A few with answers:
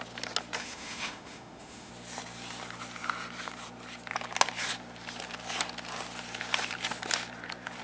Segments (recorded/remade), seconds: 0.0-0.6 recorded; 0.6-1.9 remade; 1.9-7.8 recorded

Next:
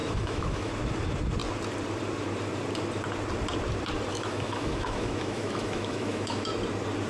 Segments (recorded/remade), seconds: 0.0-0.7 remade; 0.7-4.1 recorded; 4.1-6.5 remade; 6.5-7.1 recorded

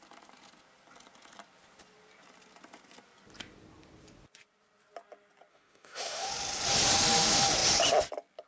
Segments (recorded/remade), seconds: 0.0-5.5 recorded; 5.5-6.3 remade; 6.3-8.5 recorded

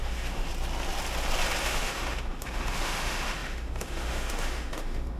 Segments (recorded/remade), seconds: 0.0-0.5 remade; 0.5-1.6 recorded; 1.6-5.2 remade

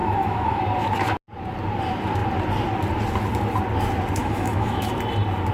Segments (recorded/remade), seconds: 0.0-0.6 remade; 0.6-4.2 recorded; 4.2-4.9 remade; 4.9-5.5 recorded

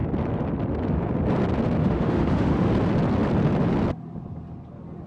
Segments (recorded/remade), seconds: 0.0-1.8 recorded; 1.8-2.7 remade; 2.7-5.1 recorded

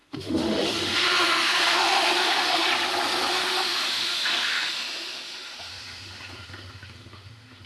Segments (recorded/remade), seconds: 0.0-2.7 remade; 2.7-3.3 recorded; 3.3-7.7 remade